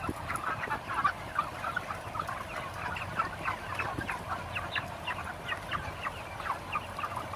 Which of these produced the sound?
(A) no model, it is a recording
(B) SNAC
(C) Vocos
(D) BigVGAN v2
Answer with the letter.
A